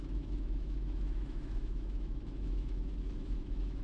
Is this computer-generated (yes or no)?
yes